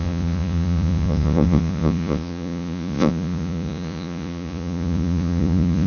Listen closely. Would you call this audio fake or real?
fake